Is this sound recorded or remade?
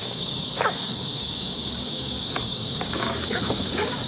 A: remade